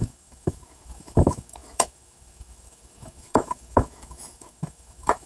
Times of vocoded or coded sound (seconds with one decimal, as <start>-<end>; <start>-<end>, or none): 0.0-5.3